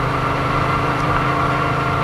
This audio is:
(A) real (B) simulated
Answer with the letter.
A